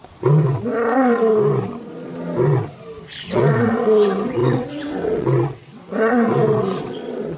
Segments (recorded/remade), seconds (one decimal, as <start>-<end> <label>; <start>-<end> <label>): 0.0-0.7 remade; 0.7-3.3 recorded; 3.3-7.4 remade